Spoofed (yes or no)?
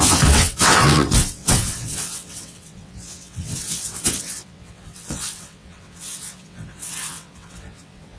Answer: yes